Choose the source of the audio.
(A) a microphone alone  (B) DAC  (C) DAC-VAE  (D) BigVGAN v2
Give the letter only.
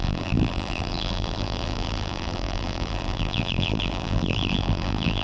D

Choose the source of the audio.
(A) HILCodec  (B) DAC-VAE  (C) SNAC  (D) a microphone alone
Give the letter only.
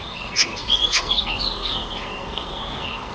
C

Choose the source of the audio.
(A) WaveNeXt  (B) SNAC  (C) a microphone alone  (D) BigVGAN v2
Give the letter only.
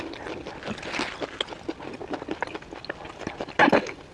C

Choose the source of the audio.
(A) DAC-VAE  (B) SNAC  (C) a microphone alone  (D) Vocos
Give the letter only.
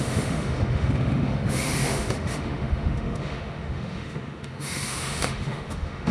A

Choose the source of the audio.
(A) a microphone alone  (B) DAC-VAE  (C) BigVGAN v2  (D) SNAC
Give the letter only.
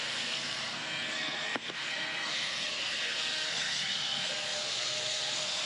D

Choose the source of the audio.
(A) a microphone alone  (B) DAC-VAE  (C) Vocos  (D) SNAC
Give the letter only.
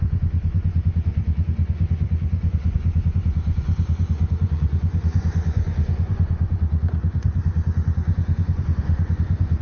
C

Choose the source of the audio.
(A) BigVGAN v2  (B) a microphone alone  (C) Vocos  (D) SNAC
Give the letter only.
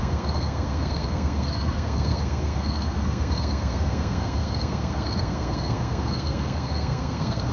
D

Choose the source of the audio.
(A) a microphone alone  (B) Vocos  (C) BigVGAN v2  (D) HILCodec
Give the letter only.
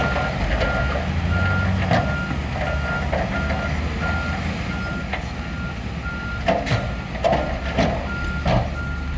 A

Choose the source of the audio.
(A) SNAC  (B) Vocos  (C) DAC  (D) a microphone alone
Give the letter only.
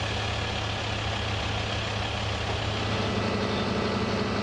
D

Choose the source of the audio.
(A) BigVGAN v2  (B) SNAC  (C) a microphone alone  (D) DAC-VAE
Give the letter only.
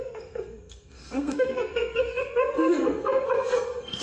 B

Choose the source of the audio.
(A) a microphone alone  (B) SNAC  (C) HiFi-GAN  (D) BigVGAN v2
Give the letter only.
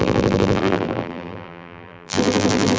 D